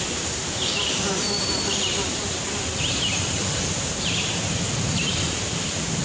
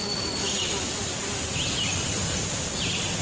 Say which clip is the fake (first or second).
first